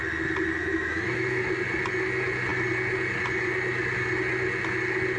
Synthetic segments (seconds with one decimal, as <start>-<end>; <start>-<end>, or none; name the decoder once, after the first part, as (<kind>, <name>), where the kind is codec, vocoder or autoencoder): 0.6-1.5 (autoencoder, DAC-VAE)